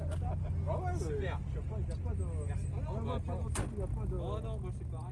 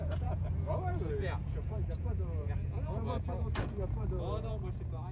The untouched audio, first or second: first